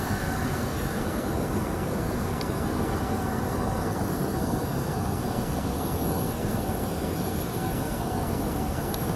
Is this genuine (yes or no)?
no